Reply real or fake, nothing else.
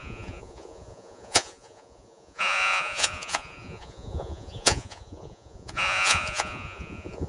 fake